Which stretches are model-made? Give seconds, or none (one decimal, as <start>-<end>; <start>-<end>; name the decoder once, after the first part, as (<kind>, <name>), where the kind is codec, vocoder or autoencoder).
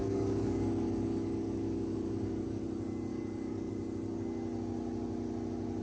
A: 0.0-2.6 (codec, DAC); 3.1-3.7